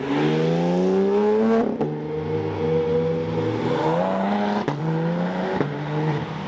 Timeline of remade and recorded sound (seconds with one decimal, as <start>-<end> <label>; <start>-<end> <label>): 0.0-6.5 recorded